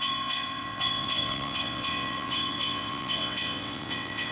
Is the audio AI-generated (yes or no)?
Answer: yes